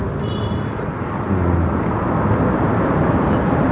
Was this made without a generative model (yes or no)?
yes